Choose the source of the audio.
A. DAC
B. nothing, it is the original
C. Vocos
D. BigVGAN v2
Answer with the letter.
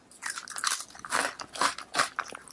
B